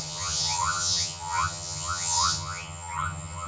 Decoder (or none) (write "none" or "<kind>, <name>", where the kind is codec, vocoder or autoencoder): vocoder, HiFi-GAN